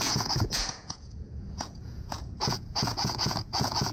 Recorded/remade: remade